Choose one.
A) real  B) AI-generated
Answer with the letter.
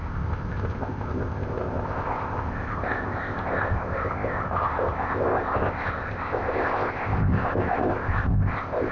B